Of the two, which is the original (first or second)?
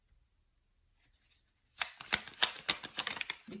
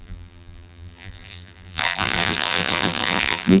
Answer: first